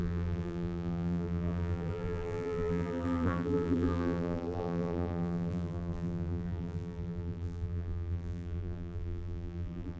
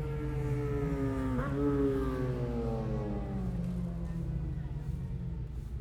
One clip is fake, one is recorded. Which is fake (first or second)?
first